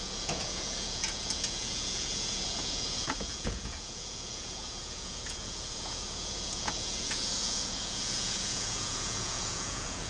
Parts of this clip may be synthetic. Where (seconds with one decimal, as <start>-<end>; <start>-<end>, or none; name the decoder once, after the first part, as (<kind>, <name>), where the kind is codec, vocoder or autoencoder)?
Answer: 0.0-10.1 (vocoder, Vocos)